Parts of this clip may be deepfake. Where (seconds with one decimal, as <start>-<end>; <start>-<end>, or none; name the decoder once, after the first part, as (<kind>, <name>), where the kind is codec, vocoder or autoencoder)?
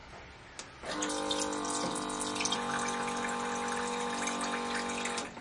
none